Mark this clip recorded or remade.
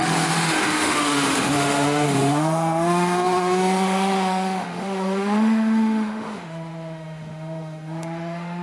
remade